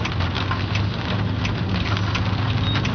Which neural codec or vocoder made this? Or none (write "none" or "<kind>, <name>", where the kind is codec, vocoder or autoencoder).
none